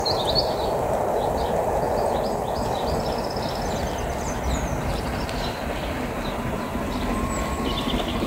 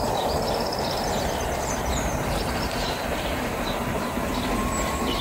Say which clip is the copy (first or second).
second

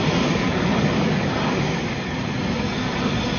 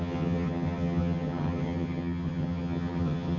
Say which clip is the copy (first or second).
second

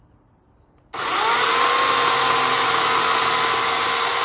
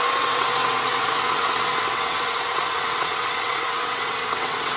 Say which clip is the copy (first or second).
second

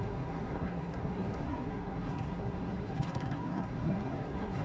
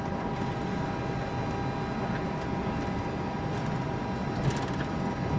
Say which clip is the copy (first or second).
first